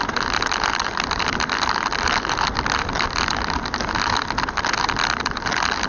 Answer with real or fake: real